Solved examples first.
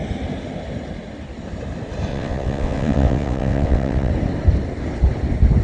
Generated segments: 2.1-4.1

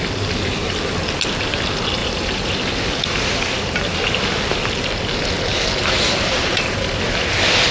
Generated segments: 2.0-2.5; 5.8-6.9

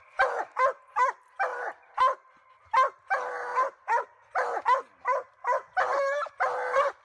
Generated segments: 1.5-2.3; 3.5-6.3

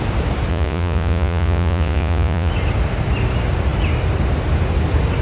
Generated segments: 0.5-2.5

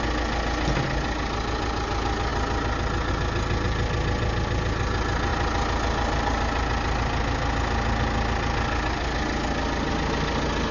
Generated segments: none